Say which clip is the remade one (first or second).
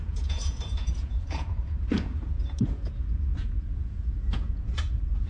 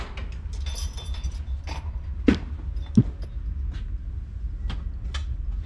first